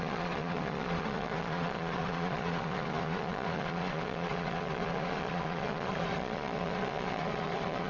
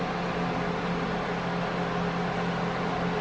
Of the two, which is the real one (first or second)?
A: second